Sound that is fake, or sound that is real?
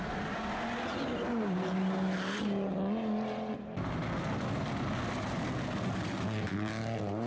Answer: real